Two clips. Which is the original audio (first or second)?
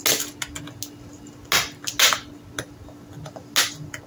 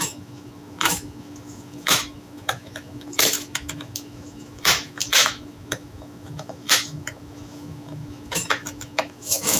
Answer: first